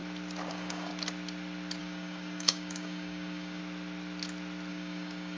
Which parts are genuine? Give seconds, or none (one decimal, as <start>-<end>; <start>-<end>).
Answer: 0.0-0.5; 0.9-1.8; 3.6-4.7